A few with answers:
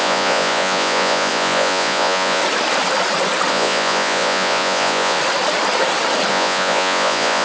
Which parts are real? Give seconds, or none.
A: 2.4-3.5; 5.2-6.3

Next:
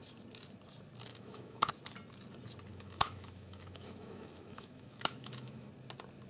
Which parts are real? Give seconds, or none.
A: 0.0-1.1; 1.7-2.7; 5.7-6.3

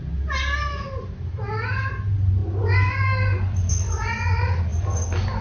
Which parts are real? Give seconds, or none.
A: 0.0-5.4

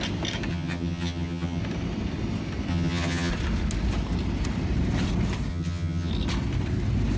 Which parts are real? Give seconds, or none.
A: 0.0-0.5; 1.6-2.7; 3.3-5.5; 6.1-7.2

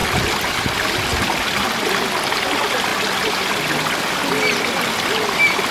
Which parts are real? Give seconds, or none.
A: 0.0-5.7

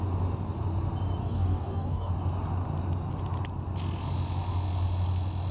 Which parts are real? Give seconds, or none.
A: 0.0-1.2; 2.1-5.5

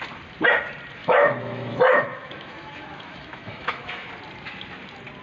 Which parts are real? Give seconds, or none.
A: 0.0-1.0; 4.1-5.2